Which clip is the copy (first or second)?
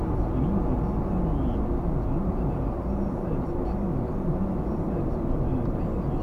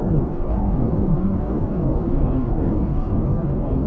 second